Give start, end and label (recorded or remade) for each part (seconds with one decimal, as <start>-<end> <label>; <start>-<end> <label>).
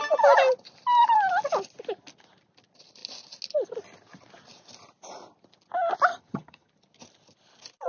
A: 0.0-6.1 recorded; 6.1-6.7 remade; 6.7-7.9 recorded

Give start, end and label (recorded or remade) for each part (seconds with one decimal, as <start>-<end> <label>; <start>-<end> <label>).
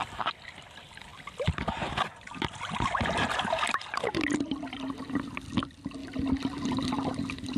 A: 0.0-7.6 recorded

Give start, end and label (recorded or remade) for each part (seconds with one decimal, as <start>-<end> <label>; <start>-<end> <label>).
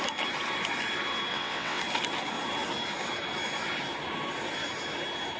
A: 0.0-1.3 recorded; 1.3-1.8 remade; 1.8-5.4 recorded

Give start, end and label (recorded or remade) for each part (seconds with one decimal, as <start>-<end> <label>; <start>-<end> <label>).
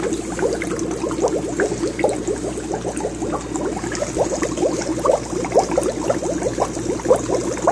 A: 0.0-7.7 recorded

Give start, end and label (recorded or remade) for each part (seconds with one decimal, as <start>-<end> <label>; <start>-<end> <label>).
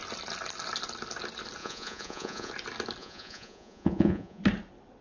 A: 0.0-1.6 recorded; 1.6-2.5 remade; 2.5-3.0 recorded; 3.0-4.4 remade; 4.4-5.0 recorded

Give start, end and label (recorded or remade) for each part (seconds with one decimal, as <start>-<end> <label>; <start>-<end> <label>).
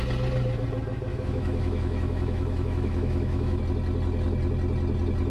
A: 0.0-1.1 recorded; 1.1-3.6 remade; 3.6-5.3 recorded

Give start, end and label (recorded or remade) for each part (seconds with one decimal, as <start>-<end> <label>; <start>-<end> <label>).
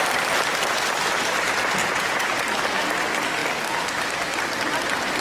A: 0.0-1.8 recorded; 1.8-2.4 remade; 2.4-5.2 recorded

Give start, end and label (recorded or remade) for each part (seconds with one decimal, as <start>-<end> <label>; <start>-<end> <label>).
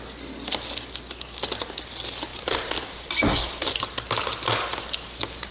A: 0.0-2.3 recorded; 2.3-3.0 remade; 3.0-5.5 recorded